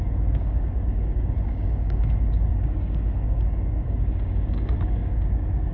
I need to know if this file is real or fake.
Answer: fake